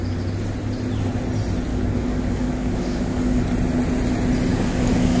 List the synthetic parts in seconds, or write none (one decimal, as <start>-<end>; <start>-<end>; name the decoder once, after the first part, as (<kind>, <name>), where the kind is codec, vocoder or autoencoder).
1.7-3.4 (codec, DAC); 4.5-5.2